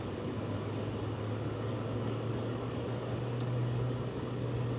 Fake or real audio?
fake